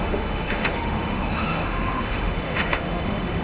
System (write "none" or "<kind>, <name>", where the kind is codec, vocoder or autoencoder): autoencoder, DAC-VAE